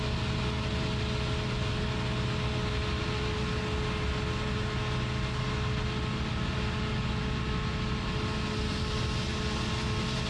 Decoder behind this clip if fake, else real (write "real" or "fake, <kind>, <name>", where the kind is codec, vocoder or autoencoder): real